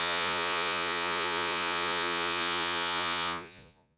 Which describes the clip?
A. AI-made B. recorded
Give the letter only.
A